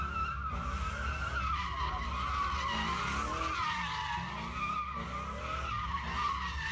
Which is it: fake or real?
real